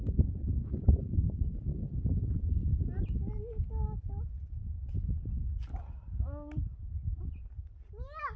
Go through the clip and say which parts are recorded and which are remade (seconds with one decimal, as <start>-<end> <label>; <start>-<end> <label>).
0.0-8.4 recorded